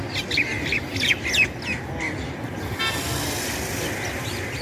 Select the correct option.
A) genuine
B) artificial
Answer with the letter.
A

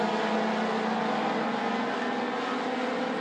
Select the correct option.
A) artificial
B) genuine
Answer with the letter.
B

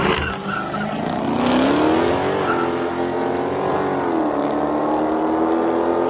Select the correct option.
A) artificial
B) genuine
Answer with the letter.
B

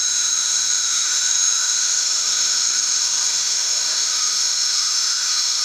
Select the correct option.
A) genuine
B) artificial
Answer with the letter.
B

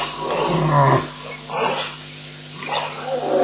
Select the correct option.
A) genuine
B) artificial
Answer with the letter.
A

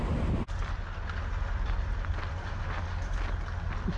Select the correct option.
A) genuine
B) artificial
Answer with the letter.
A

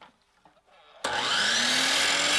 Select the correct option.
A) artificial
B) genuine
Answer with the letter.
B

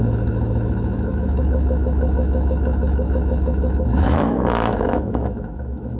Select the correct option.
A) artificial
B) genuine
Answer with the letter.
A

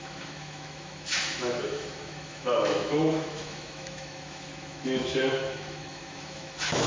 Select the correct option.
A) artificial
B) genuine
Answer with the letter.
A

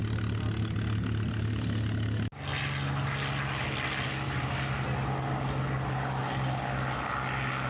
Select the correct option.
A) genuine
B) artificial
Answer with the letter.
A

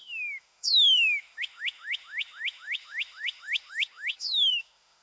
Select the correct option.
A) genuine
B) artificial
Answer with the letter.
B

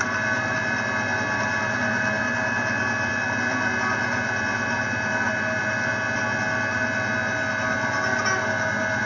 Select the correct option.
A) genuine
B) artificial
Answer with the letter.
A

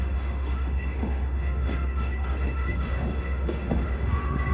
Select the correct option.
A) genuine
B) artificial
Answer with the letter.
B